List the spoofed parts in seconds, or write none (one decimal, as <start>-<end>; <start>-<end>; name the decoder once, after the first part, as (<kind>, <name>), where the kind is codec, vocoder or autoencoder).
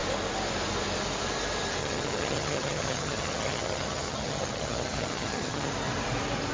1.8-5.7 (vocoder, HiFi-GAN)